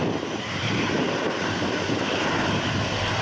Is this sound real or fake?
real